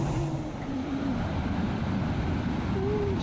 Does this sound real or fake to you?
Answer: real